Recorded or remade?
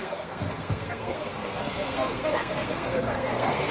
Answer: remade